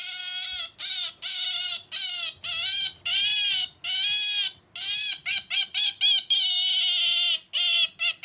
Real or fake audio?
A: real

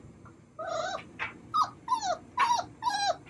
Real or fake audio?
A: real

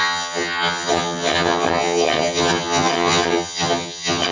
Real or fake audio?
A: fake